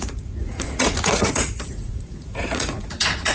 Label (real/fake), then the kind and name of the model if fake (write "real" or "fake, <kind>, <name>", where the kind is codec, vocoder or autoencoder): fake, vocoder, Vocos